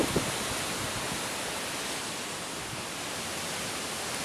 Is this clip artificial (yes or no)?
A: no